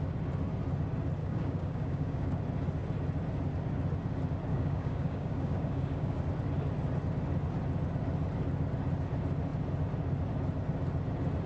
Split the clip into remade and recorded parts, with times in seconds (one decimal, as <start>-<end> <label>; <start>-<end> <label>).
0.0-1.2 recorded; 1.2-2.4 remade; 2.4-4.5 recorded; 4.5-6.2 remade; 6.2-11.5 recorded